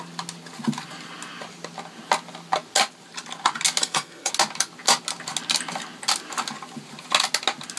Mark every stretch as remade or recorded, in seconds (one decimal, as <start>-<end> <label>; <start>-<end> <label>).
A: 0.0-3.8 recorded; 3.8-4.3 remade; 4.3-7.8 recorded